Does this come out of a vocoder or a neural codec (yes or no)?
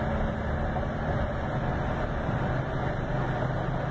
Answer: no